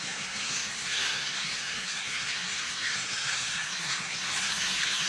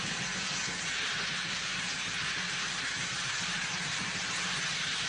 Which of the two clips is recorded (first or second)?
second